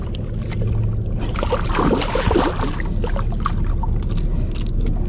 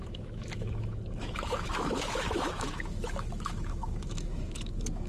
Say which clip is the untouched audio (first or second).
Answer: first